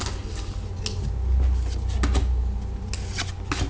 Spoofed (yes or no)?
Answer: no